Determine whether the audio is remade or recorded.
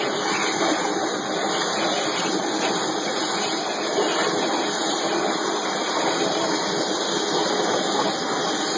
recorded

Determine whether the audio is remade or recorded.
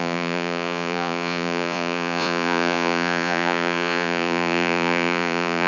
remade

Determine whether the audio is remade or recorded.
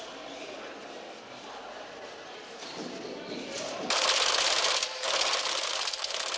remade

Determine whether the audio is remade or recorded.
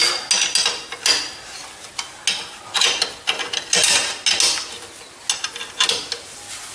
recorded